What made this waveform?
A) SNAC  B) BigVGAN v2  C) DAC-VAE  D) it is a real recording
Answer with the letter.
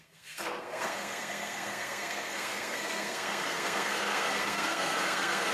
A